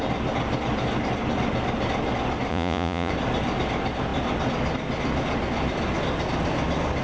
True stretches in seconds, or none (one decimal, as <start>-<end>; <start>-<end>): 0.0-2.5; 3.1-7.0